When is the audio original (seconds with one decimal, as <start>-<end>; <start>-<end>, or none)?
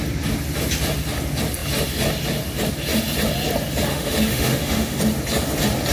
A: 0.0-3.9; 5.0-5.9